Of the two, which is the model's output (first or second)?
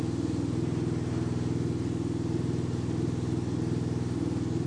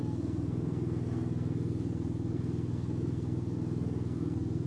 second